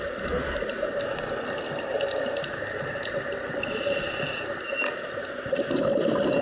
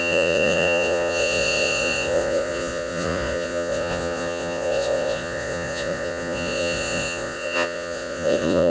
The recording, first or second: first